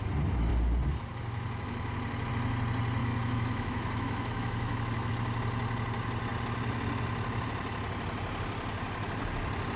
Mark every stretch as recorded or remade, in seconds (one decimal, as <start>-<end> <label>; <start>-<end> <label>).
0.0-3.0 recorded; 3.0-5.1 remade; 5.1-9.8 recorded